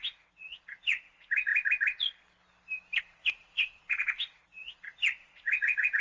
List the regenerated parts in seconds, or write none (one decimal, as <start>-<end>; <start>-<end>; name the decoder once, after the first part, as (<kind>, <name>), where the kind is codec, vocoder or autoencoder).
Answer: 0.0-1.5 (vocoder, Vocos); 3.0-6.0